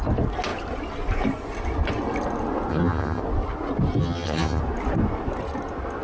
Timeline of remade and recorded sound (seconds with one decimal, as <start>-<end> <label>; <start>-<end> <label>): 0.0-2.7 recorded; 2.7-3.2 remade; 3.2-4.0 recorded; 4.0-4.6 remade; 4.6-6.0 recorded